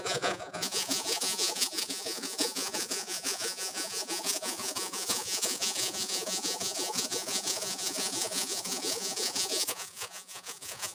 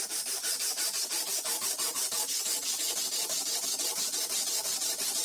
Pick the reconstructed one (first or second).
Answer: first